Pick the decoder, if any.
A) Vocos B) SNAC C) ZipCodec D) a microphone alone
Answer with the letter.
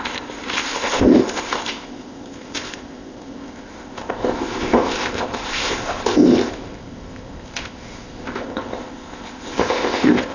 C